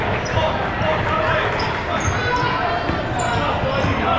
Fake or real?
real